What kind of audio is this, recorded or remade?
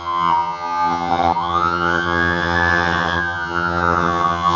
remade